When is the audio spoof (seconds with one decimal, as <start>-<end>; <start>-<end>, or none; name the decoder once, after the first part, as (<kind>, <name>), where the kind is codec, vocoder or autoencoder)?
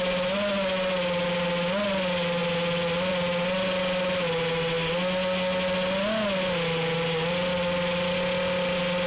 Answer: none